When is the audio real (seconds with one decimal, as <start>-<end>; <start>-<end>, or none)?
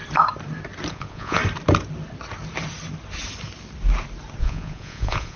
0.0-0.9; 1.4-4.4